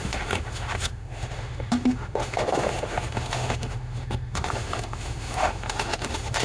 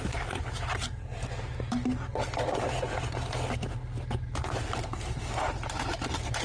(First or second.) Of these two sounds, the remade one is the first